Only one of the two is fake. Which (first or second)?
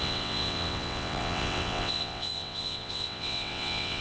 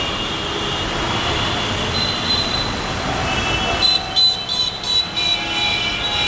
first